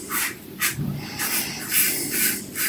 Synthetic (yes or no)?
no